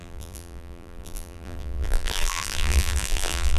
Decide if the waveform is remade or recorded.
remade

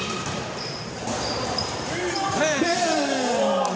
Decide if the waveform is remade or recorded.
remade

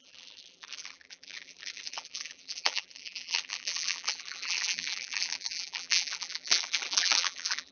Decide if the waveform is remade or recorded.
remade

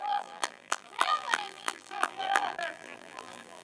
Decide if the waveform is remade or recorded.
remade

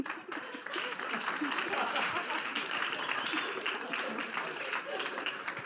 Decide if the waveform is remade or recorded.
remade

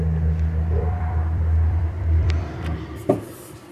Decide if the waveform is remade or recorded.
remade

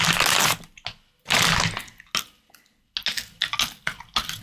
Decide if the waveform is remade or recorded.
recorded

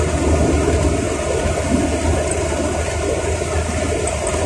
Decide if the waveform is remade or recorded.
recorded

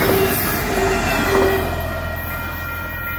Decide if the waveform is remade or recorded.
recorded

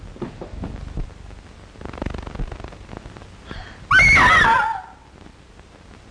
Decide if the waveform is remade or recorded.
recorded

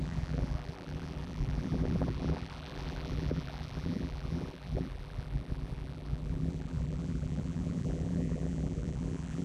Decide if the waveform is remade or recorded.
remade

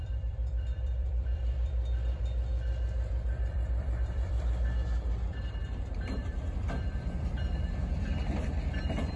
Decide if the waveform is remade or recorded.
remade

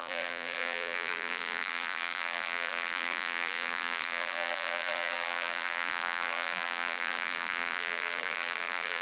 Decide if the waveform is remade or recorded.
remade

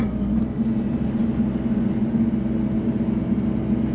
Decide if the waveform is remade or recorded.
recorded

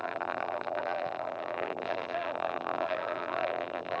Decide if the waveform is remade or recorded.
remade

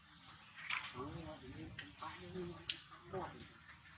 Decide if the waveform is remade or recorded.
recorded